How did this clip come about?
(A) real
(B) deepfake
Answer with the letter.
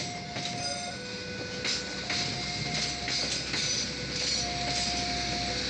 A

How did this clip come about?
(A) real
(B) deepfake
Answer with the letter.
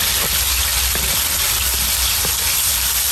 A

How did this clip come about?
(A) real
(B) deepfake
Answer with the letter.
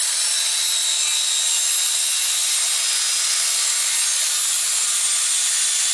A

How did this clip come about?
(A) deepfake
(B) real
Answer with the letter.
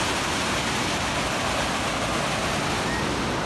B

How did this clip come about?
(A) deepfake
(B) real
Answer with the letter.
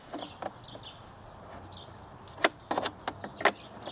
B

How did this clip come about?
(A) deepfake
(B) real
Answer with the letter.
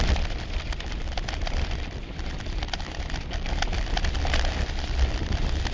B